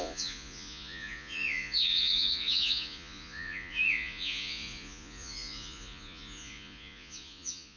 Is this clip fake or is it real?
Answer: fake